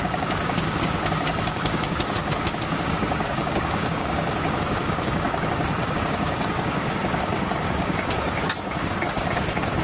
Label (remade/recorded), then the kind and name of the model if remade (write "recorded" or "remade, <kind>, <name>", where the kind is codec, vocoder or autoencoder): remade, codec, DAC